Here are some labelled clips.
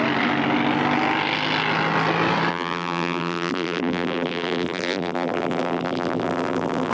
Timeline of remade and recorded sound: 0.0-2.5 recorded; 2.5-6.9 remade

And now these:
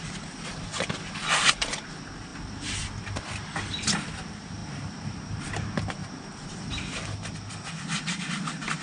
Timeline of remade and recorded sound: 0.0-4.6 recorded; 4.6-5.4 remade; 5.4-8.8 recorded

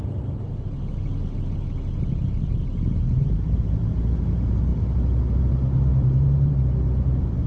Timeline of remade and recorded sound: 0.0-2.7 recorded; 2.7-4.2 remade; 4.2-5.9 recorded; 5.9-6.5 remade; 6.5-7.5 recorded

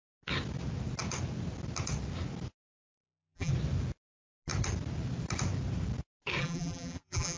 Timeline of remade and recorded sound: 0.0-2.8 recorded; 2.8-3.5 remade; 3.5-6.4 recorded; 6.4-7.4 remade

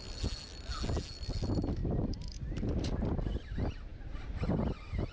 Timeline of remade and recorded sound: 0.0-5.1 recorded

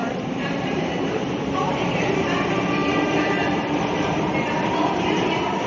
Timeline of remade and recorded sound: 0.0-5.7 remade

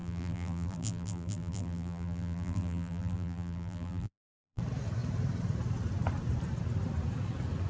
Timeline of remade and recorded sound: 0.0-4.6 remade; 4.6-7.7 recorded